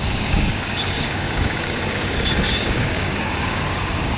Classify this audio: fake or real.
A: fake